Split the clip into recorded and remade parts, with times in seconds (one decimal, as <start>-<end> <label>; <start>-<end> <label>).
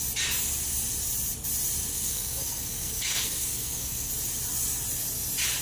0.0-1.9 recorded; 1.9-4.1 remade; 4.1-5.6 recorded